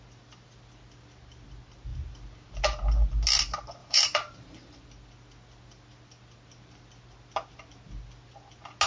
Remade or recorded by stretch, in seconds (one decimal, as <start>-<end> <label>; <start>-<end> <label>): 0.0-3.8 recorded; 3.8-4.8 remade; 4.8-8.9 recorded